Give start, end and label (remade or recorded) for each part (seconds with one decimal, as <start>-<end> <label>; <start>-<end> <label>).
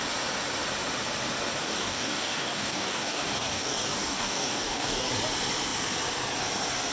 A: 0.0-1.6 recorded; 1.6-5.1 remade; 5.1-6.9 recorded